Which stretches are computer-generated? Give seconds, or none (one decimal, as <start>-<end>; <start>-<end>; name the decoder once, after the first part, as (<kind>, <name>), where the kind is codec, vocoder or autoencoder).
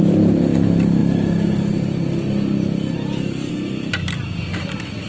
none